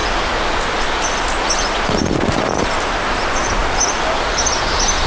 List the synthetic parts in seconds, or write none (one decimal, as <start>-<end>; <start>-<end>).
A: none